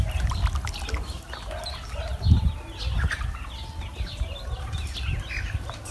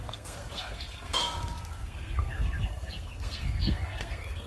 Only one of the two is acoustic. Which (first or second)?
first